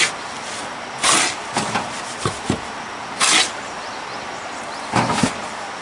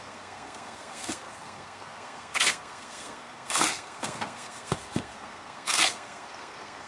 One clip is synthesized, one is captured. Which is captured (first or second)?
first